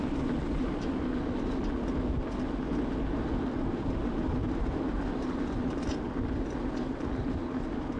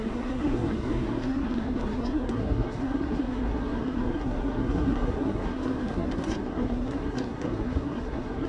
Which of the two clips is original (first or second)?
first